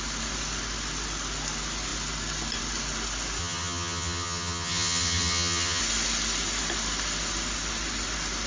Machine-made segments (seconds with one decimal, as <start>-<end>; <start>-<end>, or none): 3.4-5.8

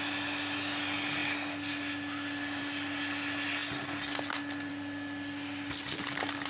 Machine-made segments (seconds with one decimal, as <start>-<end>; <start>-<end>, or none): none

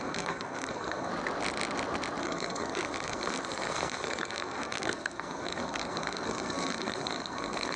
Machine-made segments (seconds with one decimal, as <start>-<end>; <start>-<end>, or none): 0.0-1.1; 2.2-7.8